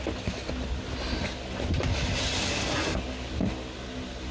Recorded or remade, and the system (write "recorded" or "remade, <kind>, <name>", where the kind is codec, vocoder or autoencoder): recorded